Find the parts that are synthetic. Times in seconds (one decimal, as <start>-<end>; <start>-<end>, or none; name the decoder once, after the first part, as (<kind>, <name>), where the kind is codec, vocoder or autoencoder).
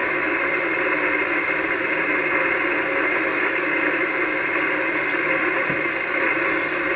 3.3-3.9 (codec, DAC)